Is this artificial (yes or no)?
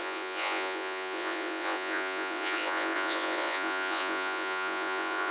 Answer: yes